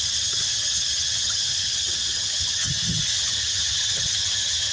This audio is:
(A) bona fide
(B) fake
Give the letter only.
B